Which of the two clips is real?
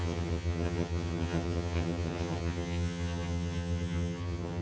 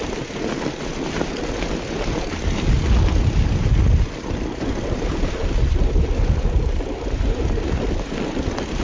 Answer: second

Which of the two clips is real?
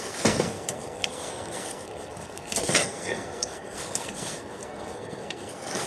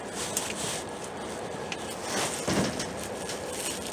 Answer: second